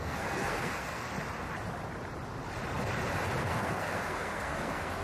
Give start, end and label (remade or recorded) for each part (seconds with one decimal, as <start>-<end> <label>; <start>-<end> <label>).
0.0-1.1 remade; 1.1-3.4 recorded; 3.4-5.0 remade